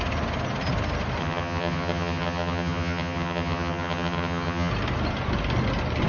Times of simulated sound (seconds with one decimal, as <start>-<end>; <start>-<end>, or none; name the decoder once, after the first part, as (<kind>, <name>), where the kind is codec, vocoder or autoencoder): 1.2-4.7 (vocoder, HiFi-GAN)